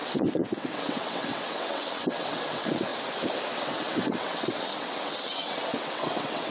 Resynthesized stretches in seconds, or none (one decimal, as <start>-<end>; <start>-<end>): 0.0-2.9; 3.6-6.5

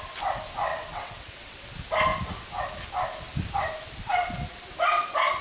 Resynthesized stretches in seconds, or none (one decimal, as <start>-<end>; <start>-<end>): 0.7-1.7